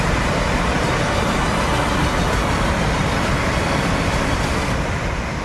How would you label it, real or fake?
real